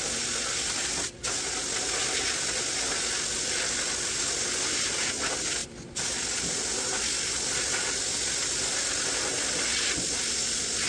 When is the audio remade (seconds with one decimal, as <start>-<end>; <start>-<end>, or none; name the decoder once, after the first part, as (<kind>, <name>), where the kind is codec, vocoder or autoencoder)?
none